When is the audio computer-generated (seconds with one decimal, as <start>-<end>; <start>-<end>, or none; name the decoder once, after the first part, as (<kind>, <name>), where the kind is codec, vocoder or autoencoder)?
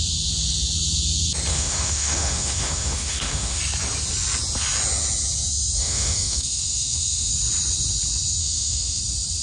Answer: 1.5-3.6 (autoencoder, DAC-VAE); 5.8-7.3; 8.4-9.0